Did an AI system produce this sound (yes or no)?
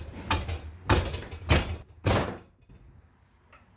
no